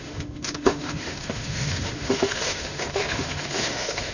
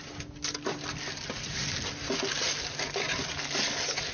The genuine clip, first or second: second